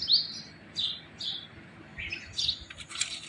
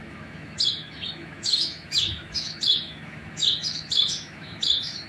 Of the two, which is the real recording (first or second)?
first